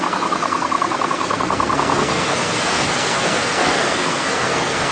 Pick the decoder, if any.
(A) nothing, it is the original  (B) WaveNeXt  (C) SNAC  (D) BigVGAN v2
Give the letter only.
C